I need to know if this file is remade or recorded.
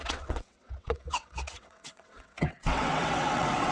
remade